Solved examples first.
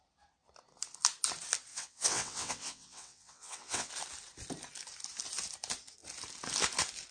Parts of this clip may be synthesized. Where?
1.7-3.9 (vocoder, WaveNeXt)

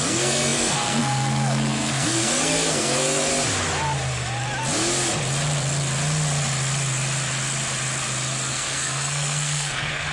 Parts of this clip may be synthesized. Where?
0.0-3.3 (codec, SNAC); 8.5-10.1

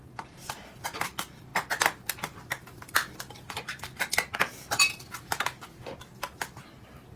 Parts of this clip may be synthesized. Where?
0.0-1.5 (vocoder, BigVGAN v2); 2.4-6.1; 6.8-7.2

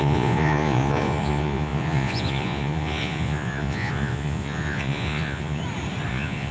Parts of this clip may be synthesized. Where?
0.0-5.6 (vocoder, Vocos); 6.1-6.5

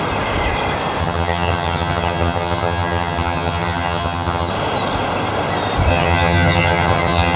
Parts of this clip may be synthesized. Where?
1.0-4.5 (vocoder, HiFi-GAN); 5.9-7.4

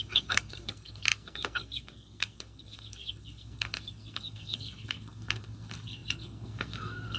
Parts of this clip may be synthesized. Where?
0.0-7.2 (codec, SNAC)